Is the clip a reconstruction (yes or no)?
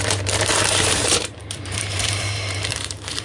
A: yes